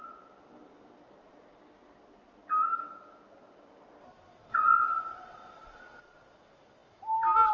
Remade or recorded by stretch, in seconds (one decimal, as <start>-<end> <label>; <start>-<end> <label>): 0.0-4.5 recorded; 4.5-6.0 remade; 6.0-7.5 recorded